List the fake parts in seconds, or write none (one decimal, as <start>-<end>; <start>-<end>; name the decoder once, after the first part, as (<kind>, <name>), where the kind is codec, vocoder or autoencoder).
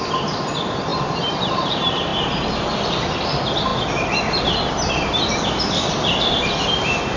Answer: 0.0-2.1 (vocoder, BigVGAN v2); 2.9-3.7; 5.9-7.2